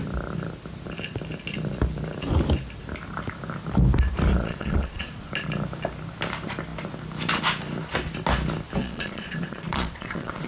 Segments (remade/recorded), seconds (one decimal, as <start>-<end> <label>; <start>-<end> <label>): 0.0-4.3 recorded; 4.3-5.3 remade; 5.3-8.8 recorded; 8.8-10.5 remade